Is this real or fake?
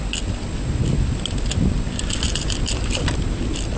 real